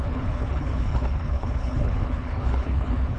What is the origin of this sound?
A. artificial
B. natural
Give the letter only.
A